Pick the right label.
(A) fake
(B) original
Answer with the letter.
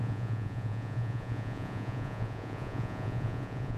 A